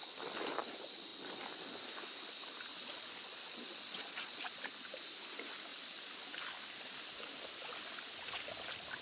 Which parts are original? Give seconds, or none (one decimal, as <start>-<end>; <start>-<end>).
0.0-2.7; 4.6-9.0